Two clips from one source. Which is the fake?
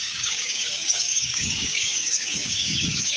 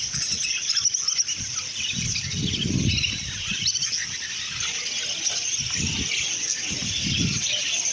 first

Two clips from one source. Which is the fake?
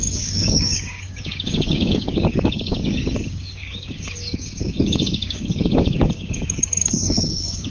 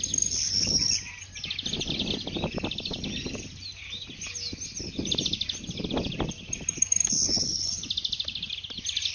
first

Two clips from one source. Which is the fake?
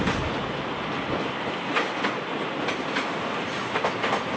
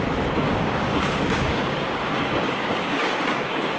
second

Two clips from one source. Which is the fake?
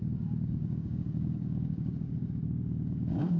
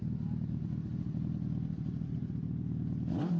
first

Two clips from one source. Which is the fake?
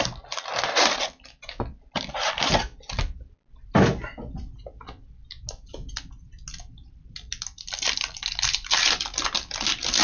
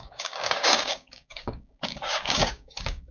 second